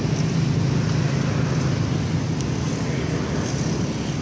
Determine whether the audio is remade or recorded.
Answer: recorded